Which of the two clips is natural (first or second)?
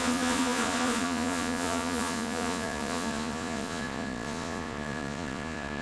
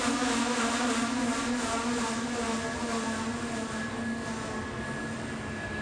second